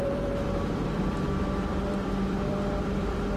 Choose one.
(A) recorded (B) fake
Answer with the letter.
B